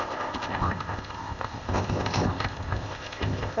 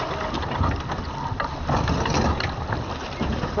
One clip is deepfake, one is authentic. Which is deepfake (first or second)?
first